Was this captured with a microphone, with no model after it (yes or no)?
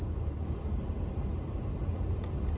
yes